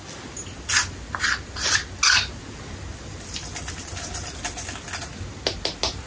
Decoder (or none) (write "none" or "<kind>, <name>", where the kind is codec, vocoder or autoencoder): none